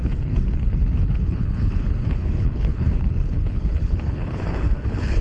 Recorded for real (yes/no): no